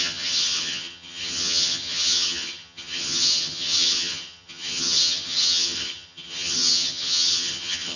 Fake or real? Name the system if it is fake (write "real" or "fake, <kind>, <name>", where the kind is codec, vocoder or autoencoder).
fake, vocoder, HiFi-GAN